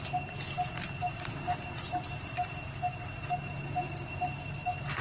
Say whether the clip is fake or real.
real